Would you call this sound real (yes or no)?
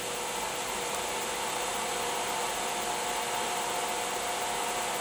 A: yes